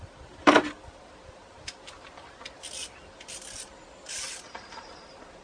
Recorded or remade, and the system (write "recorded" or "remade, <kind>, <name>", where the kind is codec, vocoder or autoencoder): recorded